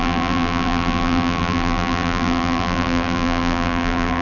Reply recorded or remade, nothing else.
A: remade